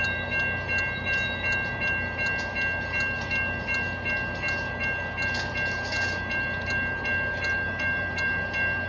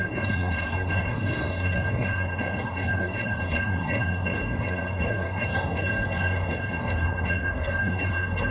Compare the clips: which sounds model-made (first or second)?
second